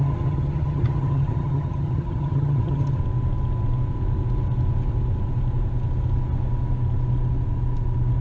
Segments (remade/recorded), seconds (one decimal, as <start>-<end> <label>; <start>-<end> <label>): 0.0-3.0 remade; 3.0-8.2 recorded